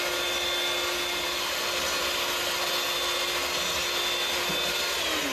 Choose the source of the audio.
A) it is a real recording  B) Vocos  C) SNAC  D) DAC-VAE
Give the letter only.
A